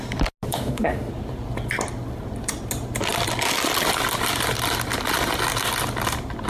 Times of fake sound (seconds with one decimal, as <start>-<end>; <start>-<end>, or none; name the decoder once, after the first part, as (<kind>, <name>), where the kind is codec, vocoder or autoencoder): 0.5-1.1 (autoencoder, DAC-VAE)